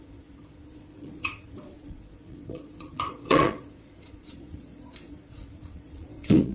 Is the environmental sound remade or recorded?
remade